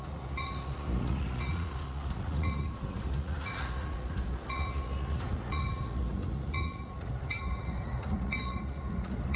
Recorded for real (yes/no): no